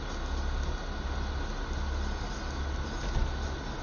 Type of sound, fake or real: real